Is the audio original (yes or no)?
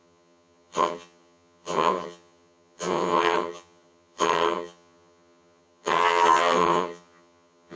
no